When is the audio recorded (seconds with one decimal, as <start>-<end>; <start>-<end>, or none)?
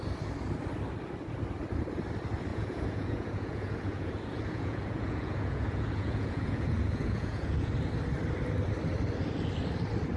0.0-2.5; 7.7-10.2